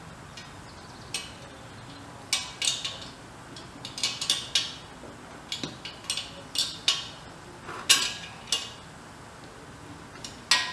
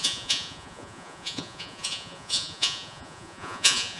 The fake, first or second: second